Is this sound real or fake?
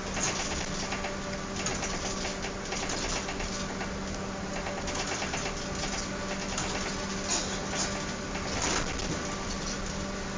real